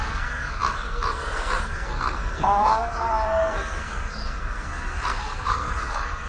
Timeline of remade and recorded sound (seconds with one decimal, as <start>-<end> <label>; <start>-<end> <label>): 0.0-6.3 remade